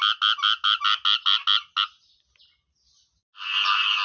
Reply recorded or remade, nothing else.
recorded